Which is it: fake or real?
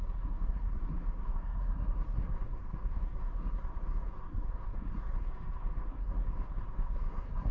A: fake